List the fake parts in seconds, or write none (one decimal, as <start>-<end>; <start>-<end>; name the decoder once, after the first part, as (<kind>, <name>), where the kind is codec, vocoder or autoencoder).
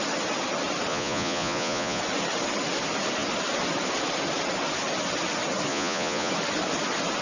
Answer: 0.9-2.0 (vocoder, Vocos); 5.7-6.3